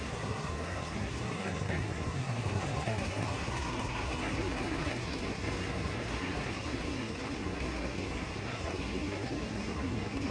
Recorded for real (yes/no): no